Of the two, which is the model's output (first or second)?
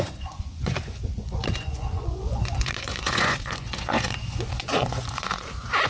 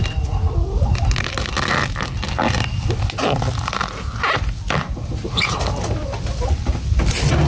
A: first